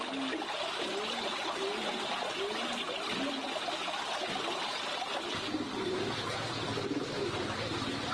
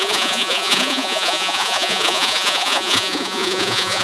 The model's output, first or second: second